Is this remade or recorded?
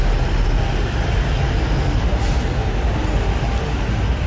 recorded